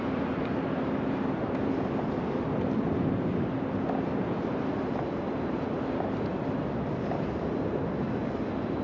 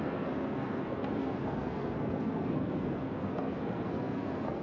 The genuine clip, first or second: first